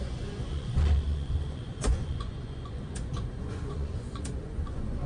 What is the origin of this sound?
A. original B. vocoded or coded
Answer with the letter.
B